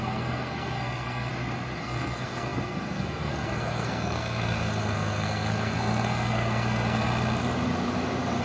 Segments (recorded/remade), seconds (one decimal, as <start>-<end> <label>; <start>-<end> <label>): 0.0-1.3 remade; 1.3-1.8 recorded; 1.8-7.1 remade; 7.1-8.4 recorded